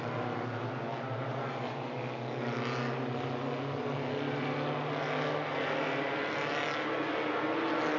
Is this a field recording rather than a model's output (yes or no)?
yes